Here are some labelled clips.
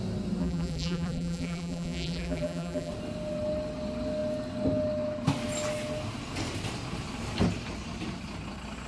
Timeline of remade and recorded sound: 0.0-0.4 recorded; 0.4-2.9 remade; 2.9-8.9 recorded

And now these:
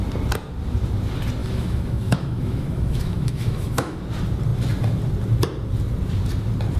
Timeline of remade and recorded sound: 0.0-1.4 recorded; 1.4-4.0 remade; 4.0-6.8 recorded

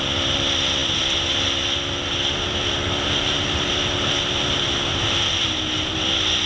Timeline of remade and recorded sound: 0.0-6.5 recorded

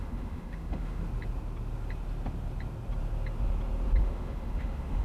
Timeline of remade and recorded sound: 0.0-1.0 remade; 1.0-4.0 recorded; 4.0-5.0 remade